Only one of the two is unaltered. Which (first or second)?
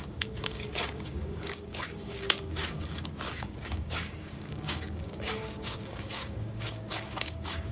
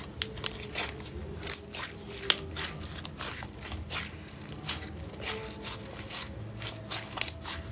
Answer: second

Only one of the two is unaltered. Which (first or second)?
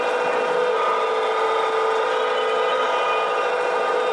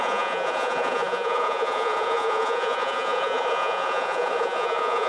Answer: first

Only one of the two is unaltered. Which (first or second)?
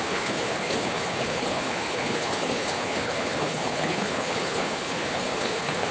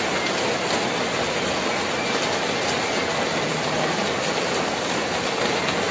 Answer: second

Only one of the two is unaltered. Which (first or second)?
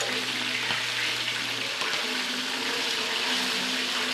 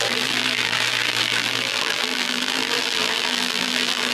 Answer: first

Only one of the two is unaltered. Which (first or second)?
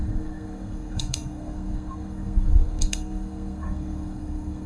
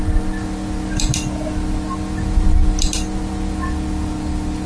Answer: second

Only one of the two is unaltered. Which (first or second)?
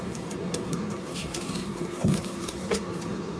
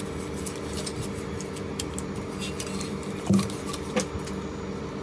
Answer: second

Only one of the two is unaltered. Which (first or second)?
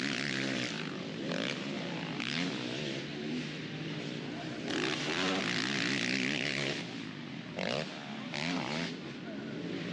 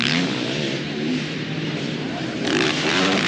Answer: first